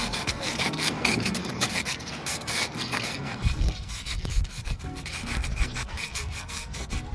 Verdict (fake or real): fake